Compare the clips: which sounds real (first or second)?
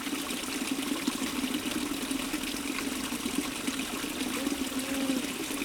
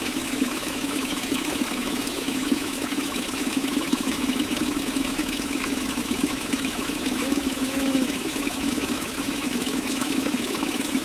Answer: first